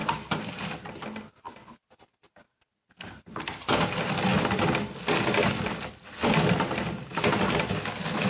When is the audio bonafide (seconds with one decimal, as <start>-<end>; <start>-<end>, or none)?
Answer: 0.0-8.3